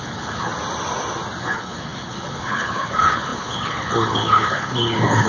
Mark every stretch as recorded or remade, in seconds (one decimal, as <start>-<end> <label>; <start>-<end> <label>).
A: 0.0-0.5 remade; 0.5-1.4 recorded; 1.4-5.3 remade